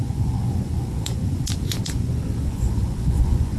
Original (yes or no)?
no